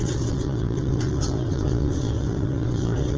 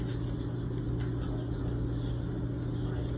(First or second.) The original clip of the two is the second